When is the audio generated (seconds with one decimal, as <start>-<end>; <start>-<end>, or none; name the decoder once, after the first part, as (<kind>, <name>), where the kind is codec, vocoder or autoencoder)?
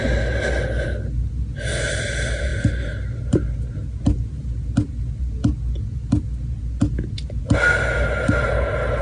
none